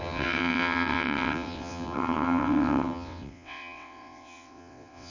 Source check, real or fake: fake